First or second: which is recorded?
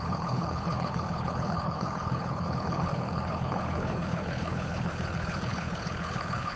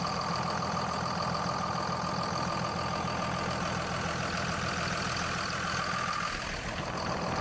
second